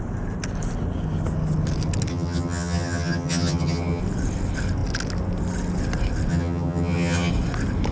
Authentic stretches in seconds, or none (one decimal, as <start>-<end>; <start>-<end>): 0.0-2.1; 4.0-6.3; 7.3-7.9